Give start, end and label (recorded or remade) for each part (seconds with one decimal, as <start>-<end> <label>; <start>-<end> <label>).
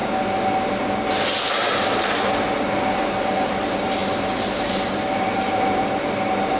0.0-2.9 recorded; 2.9-6.6 remade